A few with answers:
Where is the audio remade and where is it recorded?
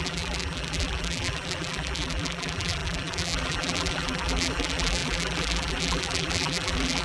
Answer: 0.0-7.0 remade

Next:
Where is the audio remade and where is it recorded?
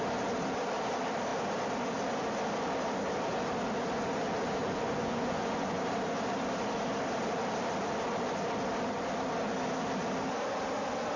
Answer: 0.0-4.6 recorded; 4.6-5.8 remade; 5.8-11.2 recorded